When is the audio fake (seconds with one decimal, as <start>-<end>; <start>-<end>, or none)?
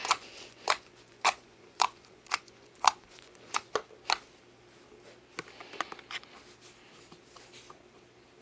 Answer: 0.0-3.9